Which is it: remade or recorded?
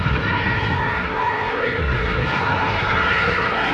remade